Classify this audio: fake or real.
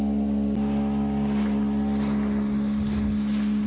real